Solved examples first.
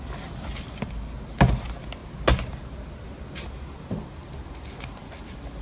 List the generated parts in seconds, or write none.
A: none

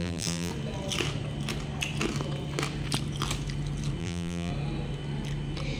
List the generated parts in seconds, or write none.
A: 0.0-0.5 (vocoder, BigVGAN v2); 4.0-4.5

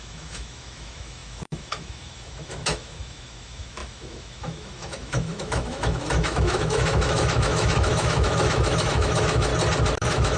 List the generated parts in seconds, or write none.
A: 0.0-9.5 (autoencoder, DAC-VAE); 10.0-10.4

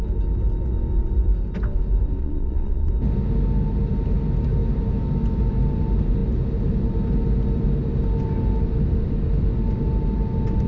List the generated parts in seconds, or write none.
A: 2.2-2.9 (vocoder, Vocos)

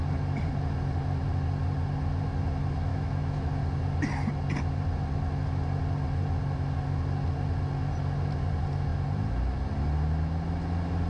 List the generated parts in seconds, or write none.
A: 2.9-3.5 (autoencoder, DAC-VAE)

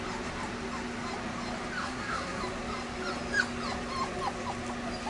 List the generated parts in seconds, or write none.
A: 1.8-2.4 (codec, SNAC)

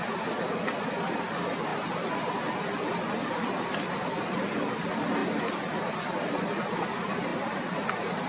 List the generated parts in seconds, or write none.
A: none